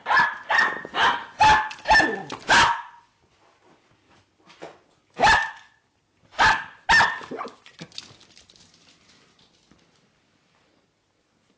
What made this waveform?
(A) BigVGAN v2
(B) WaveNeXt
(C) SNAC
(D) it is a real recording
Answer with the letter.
D